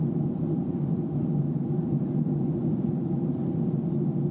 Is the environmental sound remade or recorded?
recorded